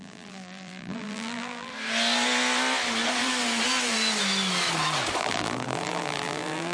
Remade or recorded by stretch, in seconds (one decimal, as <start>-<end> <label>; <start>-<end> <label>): 0.0-1.7 remade; 1.7-5.2 recorded; 5.2-6.7 remade

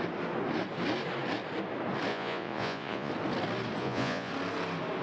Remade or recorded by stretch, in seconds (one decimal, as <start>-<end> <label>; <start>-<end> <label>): 0.0-2.1 recorded; 2.1-3.1 remade; 3.1-3.8 recorded; 3.8-4.3 remade; 4.3-5.0 recorded